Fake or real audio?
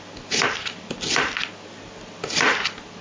real